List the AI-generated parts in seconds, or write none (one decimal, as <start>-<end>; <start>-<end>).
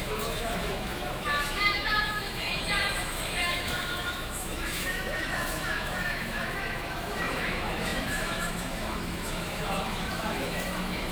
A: 0.0-11.1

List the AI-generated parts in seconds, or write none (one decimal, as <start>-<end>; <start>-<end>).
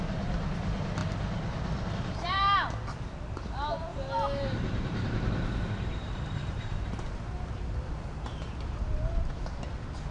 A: 3.9-9.0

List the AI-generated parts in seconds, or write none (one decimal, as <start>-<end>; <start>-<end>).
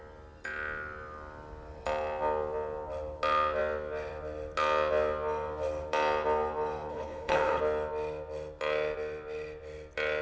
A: 6.9-7.6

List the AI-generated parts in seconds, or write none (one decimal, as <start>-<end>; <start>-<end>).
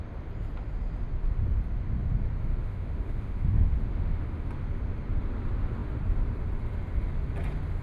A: 2.5-4.5